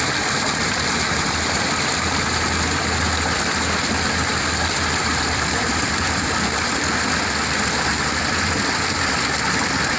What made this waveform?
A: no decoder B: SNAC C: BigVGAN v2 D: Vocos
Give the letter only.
A